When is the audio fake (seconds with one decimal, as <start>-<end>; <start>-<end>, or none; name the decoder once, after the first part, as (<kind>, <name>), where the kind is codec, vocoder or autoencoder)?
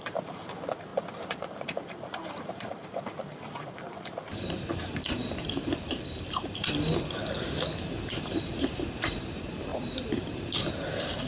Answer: 0.0-7.2 (vocoder, BigVGAN v2); 8.1-11.3